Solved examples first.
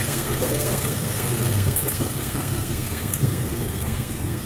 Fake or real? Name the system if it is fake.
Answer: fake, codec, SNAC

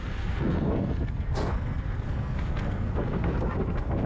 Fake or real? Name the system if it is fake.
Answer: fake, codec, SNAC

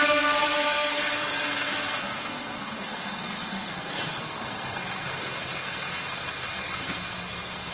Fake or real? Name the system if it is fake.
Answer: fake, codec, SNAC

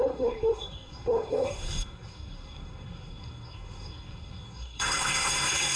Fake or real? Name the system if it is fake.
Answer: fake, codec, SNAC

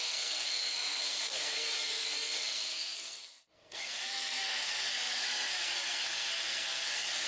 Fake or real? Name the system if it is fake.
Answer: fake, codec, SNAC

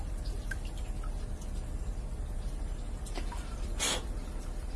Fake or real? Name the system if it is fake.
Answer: real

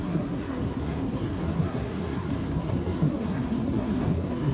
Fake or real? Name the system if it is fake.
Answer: fake, codec, SNAC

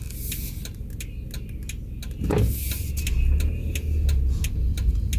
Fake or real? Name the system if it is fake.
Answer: real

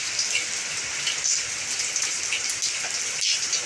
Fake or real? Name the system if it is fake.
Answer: real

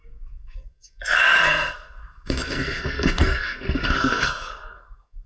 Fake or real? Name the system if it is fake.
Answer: fake, codec, SNAC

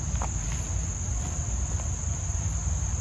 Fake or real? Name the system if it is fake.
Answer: real